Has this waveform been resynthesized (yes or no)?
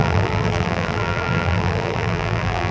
yes